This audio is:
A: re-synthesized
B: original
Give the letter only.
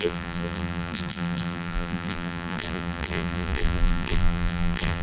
A